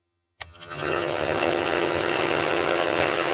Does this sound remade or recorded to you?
remade